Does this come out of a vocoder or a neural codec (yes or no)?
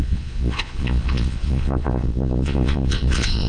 yes